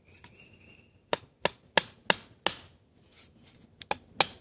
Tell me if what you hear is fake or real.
real